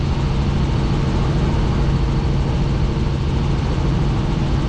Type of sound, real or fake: real